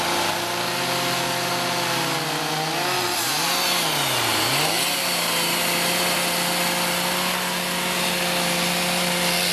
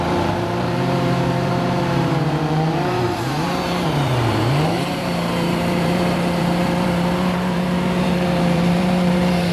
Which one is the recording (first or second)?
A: first